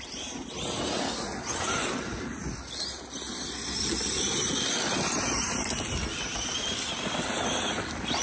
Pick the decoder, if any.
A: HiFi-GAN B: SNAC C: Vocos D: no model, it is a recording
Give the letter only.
D